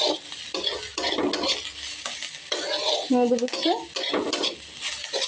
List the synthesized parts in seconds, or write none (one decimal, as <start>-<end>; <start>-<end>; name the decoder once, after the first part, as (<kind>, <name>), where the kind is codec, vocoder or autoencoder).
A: none